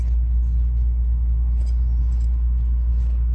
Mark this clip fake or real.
real